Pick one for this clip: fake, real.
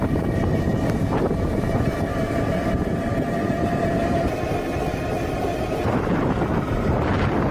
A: fake